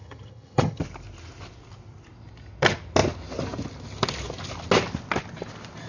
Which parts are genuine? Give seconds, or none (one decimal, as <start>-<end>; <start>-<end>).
0.8-5.9